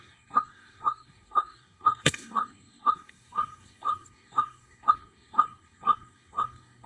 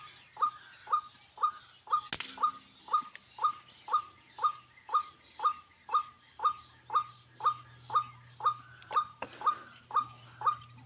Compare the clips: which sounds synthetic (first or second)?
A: first